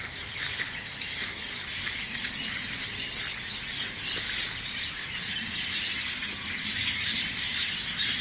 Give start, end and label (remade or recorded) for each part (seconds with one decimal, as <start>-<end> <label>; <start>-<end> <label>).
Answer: 0.0-8.2 recorded

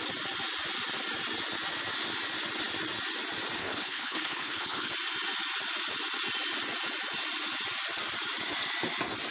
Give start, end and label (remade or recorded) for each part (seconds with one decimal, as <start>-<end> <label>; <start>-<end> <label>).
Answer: 0.0-3.6 recorded; 3.6-4.9 remade; 4.9-9.3 recorded

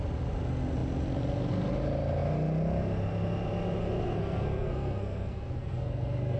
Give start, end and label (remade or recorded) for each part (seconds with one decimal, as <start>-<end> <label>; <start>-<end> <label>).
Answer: 0.0-3.8 recorded; 3.8-6.4 remade

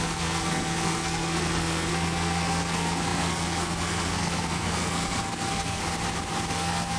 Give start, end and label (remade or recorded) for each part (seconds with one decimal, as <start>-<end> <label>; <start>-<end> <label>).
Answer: 0.0-5.8 remade; 5.8-6.5 recorded; 6.5-7.0 remade

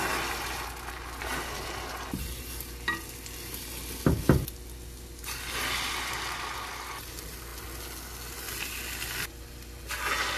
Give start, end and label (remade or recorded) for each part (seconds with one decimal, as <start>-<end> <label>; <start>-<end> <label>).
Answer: 0.0-10.4 recorded